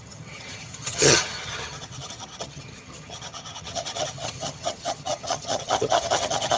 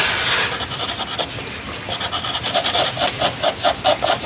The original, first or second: second